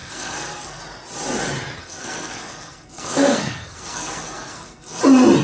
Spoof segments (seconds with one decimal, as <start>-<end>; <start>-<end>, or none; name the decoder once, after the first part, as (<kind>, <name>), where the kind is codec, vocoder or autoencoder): 0.0-0.8 (codec, SNAC); 1.8-5.0